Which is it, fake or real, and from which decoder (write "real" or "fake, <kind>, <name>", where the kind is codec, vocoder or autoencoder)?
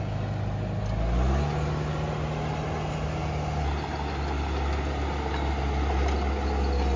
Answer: real